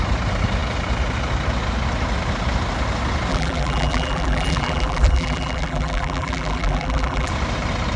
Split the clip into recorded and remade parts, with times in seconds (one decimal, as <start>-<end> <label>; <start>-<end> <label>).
0.0-3.3 recorded; 3.3-7.3 remade; 7.3-8.0 recorded